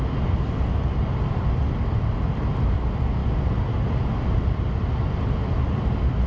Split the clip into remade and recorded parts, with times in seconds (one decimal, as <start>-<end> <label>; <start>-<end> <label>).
0.0-6.3 recorded